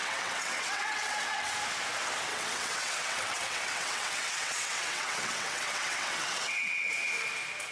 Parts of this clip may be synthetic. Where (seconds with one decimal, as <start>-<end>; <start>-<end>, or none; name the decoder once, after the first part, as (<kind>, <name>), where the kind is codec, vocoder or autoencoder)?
0.0-1.5 (vocoder, WaveNeXt); 2.3-6.9